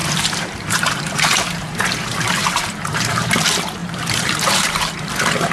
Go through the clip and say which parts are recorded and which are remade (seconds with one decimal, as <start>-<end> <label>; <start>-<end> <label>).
0.0-3.3 remade; 3.3-3.8 recorded; 3.8-5.1 remade; 5.1-5.5 recorded